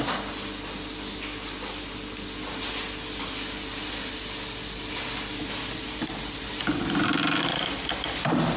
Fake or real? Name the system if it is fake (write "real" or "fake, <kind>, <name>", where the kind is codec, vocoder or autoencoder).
real